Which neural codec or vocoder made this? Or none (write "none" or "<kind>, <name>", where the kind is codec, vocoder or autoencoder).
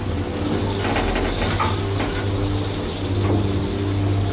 none